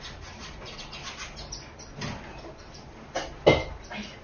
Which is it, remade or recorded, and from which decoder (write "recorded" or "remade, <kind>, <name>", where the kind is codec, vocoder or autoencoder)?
recorded